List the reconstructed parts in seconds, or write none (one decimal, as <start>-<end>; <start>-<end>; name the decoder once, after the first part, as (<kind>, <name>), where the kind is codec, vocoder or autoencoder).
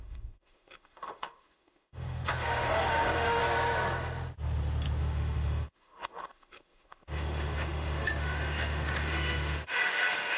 0.0-3.4 (autoencoder, DAC-VAE); 5.0-10.4